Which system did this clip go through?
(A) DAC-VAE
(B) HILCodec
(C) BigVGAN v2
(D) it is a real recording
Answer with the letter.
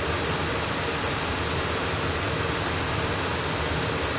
D